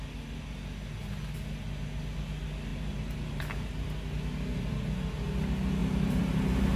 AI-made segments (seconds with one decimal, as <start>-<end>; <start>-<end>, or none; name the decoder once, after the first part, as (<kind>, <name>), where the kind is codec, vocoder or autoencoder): 2.7-3.4 (vocoder, BigVGAN v2); 5.8-6.8